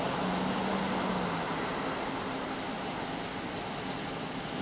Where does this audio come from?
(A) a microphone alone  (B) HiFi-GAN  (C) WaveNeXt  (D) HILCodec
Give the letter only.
A